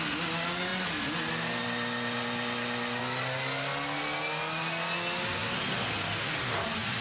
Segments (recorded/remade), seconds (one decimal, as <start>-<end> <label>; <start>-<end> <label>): 0.0-7.0 recorded